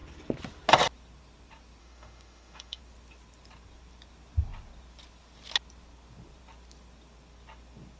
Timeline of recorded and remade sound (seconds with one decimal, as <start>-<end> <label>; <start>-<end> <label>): 0.0-1.8 recorded; 1.8-2.8 remade; 2.8-8.0 recorded